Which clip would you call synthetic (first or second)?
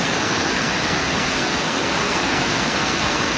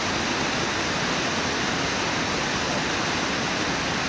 first